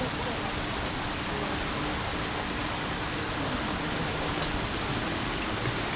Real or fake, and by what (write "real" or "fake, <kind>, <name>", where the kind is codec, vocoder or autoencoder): real